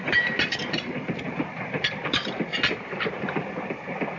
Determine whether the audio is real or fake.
fake